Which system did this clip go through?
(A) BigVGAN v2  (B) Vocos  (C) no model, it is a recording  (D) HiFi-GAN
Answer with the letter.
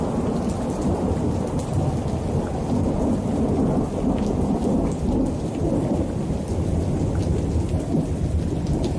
C